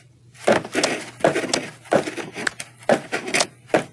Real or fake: real